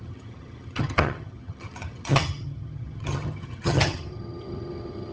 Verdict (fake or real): fake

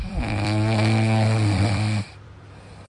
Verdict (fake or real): fake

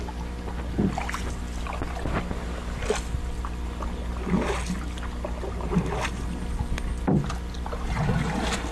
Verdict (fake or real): real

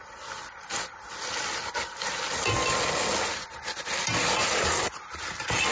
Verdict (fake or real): real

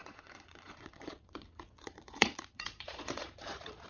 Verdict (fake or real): fake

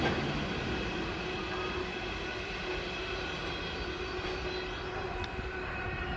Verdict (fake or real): real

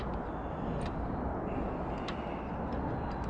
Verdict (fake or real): real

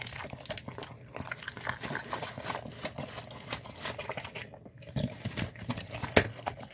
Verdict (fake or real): real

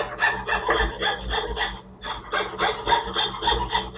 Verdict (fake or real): real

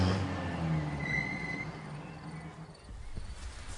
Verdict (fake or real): real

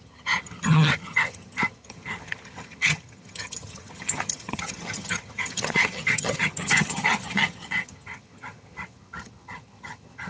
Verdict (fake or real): fake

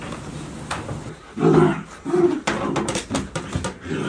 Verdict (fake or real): real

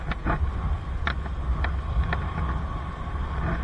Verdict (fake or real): real